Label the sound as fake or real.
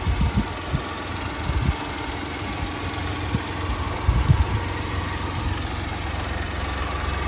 real